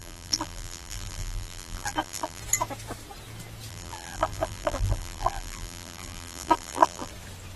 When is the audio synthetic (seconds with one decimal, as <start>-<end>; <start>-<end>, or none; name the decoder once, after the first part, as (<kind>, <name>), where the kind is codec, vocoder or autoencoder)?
0.0-2.4 (vocoder, BigVGAN v2); 3.7-7.1